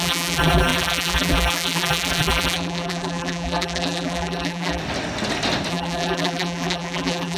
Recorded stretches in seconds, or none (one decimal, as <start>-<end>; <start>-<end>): 4.8-5.7